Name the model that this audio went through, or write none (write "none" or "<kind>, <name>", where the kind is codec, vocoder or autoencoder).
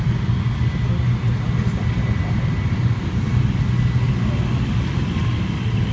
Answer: none